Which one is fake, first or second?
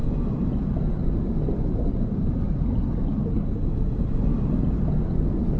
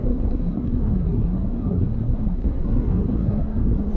second